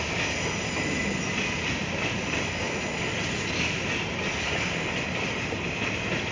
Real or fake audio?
real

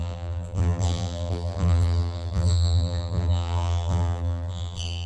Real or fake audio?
fake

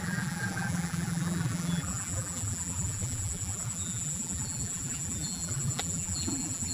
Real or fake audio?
fake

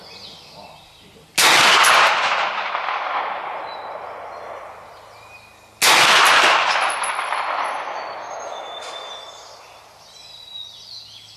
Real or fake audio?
real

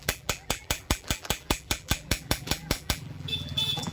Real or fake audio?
fake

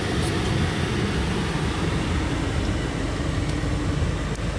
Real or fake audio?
real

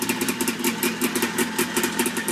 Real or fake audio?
real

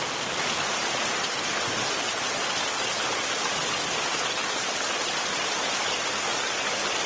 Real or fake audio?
real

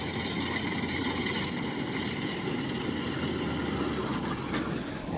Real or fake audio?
real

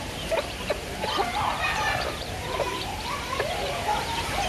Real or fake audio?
fake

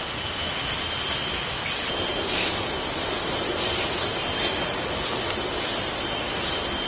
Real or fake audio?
real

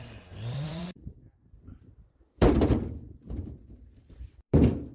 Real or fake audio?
fake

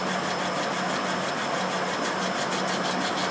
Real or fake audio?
real